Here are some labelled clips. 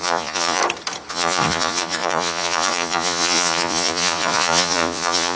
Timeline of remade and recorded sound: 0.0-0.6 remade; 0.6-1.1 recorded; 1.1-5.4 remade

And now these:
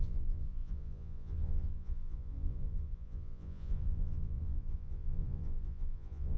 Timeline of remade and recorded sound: 0.0-6.4 remade

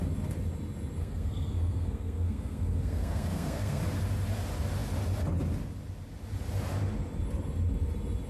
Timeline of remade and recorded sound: 0.0-1.0 recorded; 1.0-3.8 remade; 3.8-8.3 recorded

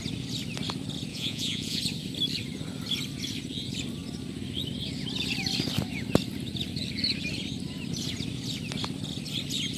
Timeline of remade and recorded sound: 0.0-1.1 recorded; 1.1-1.8 remade; 1.8-9.8 recorded

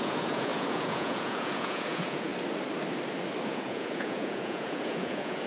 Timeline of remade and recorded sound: 0.0-2.3 remade; 2.3-3.5 recorded; 3.5-5.5 remade

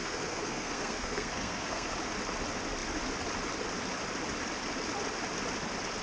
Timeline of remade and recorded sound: 0.0-1.9 remade; 1.9-6.0 recorded

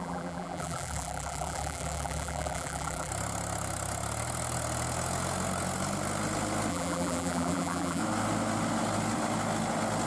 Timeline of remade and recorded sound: 0.0-3.1 remade; 3.1-6.7 recorded; 6.7-8.0 remade; 8.0-10.1 recorded